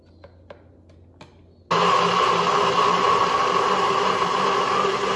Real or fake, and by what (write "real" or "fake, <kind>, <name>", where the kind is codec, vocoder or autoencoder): real